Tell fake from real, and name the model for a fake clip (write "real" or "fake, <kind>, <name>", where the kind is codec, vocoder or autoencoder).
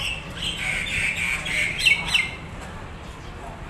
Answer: real